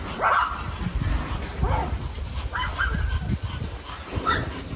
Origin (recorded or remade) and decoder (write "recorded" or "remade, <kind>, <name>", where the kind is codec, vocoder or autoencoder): recorded